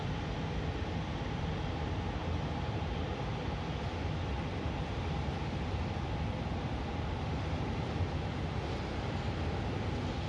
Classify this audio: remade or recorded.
recorded